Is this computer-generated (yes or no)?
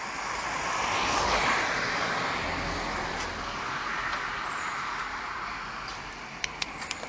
no